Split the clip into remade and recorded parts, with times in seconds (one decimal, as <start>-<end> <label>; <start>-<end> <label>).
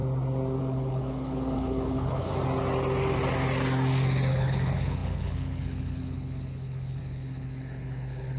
0.0-0.6 recorded; 0.6-2.3 remade; 2.3-4.3 recorded; 4.3-8.4 remade